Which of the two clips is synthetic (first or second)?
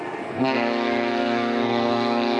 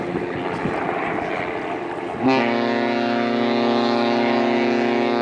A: first